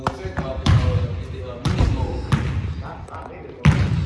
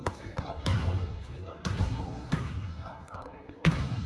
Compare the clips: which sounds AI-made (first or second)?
second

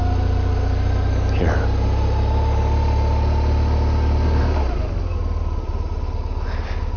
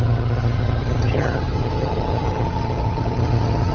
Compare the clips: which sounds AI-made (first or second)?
second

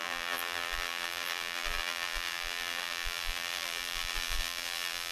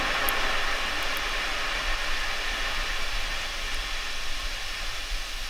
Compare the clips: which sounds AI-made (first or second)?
first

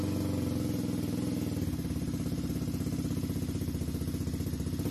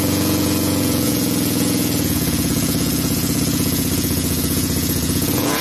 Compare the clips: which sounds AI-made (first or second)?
second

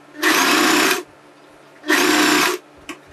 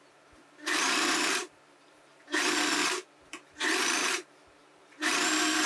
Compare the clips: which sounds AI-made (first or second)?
second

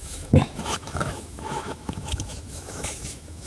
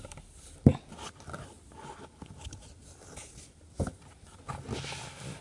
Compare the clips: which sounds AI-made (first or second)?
first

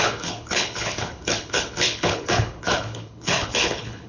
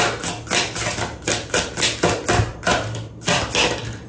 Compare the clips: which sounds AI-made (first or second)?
first